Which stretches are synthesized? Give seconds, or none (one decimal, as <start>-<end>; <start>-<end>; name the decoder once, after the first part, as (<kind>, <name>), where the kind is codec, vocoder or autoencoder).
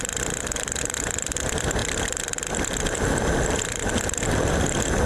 none